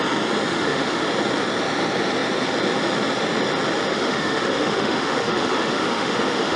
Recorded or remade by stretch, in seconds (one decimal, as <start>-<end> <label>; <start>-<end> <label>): 0.0-0.5 recorded; 0.5-1.1 remade; 1.1-3.9 recorded; 3.9-6.6 remade

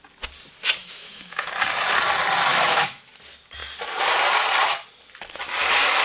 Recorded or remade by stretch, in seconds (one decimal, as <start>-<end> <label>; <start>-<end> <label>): 0.0-0.8 recorded; 0.8-1.5 remade; 1.5-2.5 recorded; 2.5-3.1 remade; 3.1-6.0 recorded

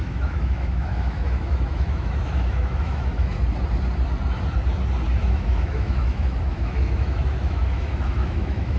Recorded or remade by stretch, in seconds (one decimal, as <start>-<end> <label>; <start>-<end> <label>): 0.0-3.3 remade; 3.3-5.2 recorded; 5.2-8.8 remade

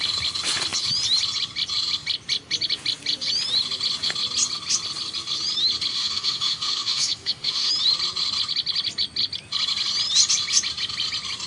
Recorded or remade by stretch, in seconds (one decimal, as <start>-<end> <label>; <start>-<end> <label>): 0.0-5.9 recorded; 5.9-7.7 remade; 7.7-11.5 recorded

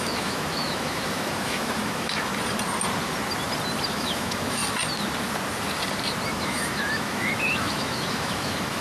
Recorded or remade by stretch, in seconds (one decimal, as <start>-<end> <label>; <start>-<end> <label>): 0.0-2.3 remade; 2.3-3.9 recorded; 3.9-4.6 remade; 4.6-6.3 recorded; 6.3-8.8 remade

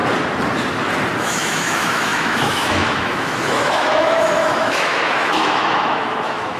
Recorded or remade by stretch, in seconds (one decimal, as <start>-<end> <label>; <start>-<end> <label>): 0.0-1.2 recorded; 1.2-6.6 remade

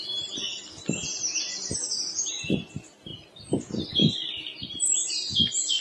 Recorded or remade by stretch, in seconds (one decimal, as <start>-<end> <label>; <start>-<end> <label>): 0.0-5.8 recorded